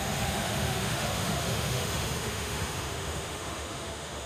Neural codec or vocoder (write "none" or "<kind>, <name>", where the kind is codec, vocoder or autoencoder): autoencoder, DAC-VAE